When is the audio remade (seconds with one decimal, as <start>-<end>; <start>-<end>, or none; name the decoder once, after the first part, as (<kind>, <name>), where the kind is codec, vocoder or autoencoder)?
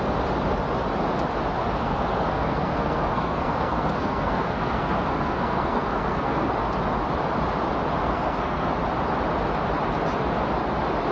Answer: 1.6-6.5 (codec, SNAC); 8.0-8.7